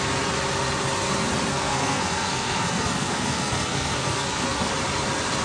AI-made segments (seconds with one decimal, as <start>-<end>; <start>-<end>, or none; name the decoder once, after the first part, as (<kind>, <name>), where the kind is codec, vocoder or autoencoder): 1.5-4.7 (codec, SNAC)

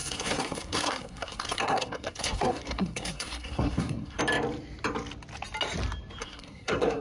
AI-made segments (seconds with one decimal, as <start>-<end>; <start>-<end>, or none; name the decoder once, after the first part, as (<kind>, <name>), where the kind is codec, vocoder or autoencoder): 0.0-4.2 (codec, SNAC); 6.2-7.0

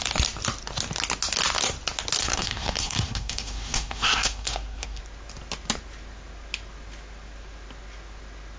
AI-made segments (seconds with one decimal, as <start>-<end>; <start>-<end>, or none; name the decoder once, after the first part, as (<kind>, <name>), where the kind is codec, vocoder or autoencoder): 2.2-5.0 (codec, SNAC)

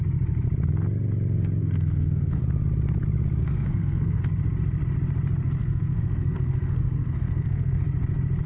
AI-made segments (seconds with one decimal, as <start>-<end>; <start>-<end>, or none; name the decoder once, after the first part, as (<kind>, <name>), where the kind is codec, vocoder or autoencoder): 1.6-2.4 (codec, SNAC); 3.4-4.2; 5.6-7.8